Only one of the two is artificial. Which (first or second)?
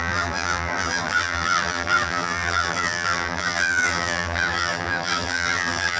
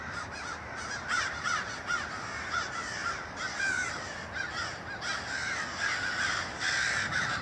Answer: first